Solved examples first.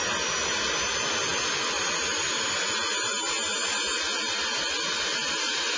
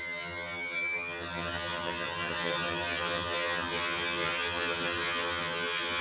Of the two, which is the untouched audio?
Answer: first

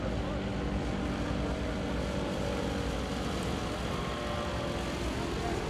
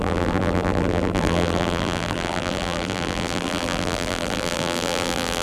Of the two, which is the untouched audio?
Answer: first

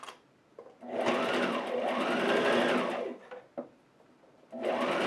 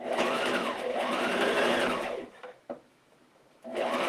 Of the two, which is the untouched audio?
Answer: first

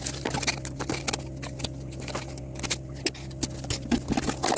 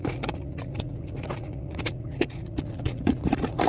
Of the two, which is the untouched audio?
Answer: first